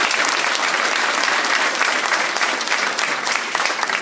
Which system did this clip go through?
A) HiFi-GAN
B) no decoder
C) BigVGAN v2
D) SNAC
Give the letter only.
C